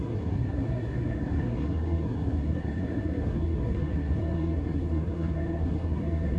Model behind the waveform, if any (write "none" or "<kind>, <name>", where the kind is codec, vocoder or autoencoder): codec, SNAC